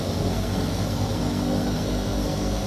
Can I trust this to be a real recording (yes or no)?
no